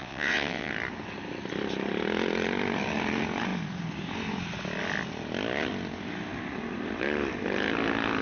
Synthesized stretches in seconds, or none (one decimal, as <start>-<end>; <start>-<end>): 0.0-0.7